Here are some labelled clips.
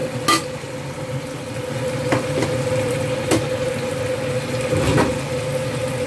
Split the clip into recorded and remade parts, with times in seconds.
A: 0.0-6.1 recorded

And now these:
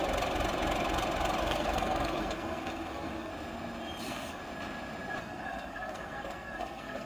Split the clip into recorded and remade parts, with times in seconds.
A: 0.0-1.4 recorded; 1.4-3.3 remade; 3.3-4.0 recorded; 4.0-4.4 remade; 4.4-5.2 recorded; 5.2-7.1 remade

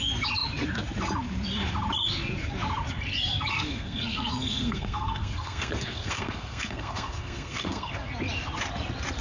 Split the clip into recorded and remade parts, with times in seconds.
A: 0.0-3.5 recorded; 3.5-7.9 remade; 7.9-9.2 recorded